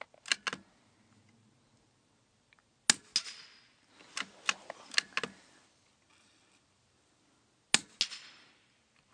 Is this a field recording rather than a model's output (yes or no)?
yes